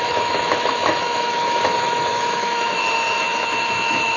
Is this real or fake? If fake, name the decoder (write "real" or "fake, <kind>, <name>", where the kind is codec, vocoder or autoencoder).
fake, autoencoder, DAC-VAE